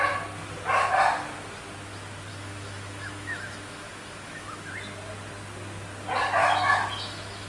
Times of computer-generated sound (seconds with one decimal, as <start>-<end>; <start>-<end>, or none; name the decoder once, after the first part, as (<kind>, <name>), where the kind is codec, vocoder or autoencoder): 2.3-4.7 (autoencoder, DAC-VAE); 6.4-7.5

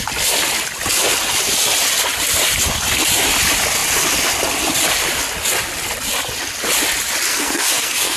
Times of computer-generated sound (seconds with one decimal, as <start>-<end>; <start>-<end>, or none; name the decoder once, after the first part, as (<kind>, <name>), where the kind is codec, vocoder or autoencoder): 7.3-8.2 (codec, SNAC)

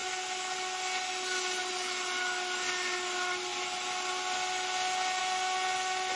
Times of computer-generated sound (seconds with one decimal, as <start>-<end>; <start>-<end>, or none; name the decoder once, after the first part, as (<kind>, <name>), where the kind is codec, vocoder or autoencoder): none

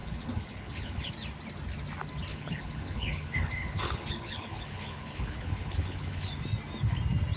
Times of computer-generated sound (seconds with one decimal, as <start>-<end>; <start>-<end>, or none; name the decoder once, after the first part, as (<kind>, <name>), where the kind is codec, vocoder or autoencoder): 0.0-1.1 (codec, HILCodec); 2.3-6.3

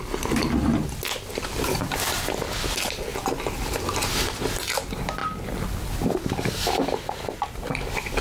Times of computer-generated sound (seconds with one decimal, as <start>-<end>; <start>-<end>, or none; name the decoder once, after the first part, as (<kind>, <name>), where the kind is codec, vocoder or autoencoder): none

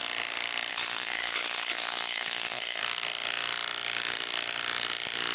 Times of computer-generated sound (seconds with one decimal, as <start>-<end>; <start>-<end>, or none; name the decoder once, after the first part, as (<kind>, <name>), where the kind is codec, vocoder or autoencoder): 0.7-2.8 (codec, SNAC)

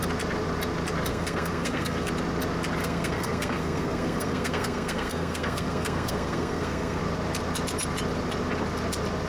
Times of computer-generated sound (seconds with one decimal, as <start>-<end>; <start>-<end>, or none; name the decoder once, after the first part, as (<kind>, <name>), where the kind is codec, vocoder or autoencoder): 1.1-2.1 (codec, SNAC); 2.8-7.0